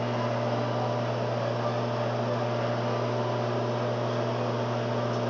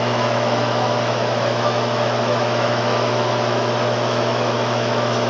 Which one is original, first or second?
first